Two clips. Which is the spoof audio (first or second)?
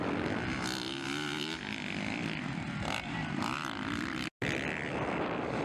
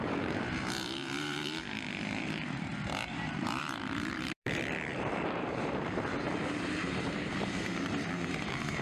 second